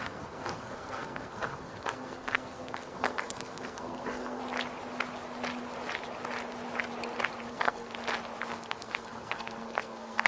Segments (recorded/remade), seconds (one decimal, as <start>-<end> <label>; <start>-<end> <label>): 0.0-4.4 remade; 4.4-7.5 recorded; 7.5-7.9 remade; 7.9-8.5 recorded; 8.5-10.3 remade